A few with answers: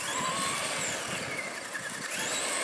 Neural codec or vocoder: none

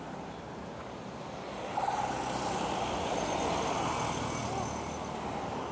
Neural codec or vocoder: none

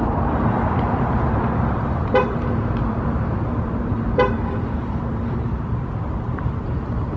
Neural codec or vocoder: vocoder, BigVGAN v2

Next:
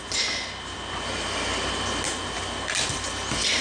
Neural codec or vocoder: none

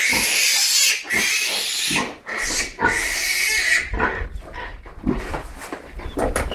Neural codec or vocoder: none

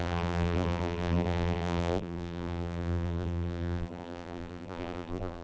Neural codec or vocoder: vocoder, BigVGAN v2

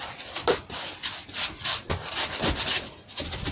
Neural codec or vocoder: none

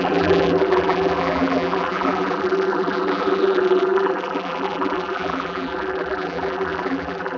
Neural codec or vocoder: vocoder, BigVGAN v2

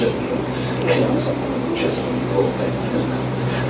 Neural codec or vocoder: none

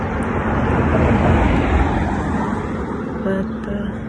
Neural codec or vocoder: none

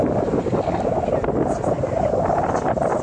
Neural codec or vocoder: none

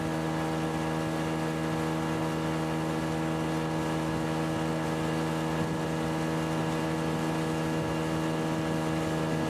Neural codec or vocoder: none